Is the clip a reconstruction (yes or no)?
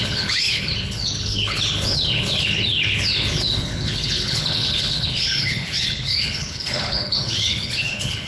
yes